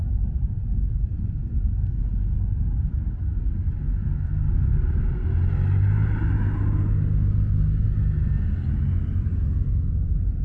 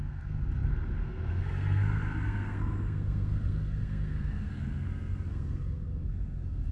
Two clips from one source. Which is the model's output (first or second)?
second